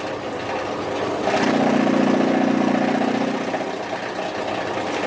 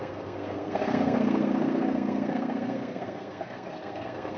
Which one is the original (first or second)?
first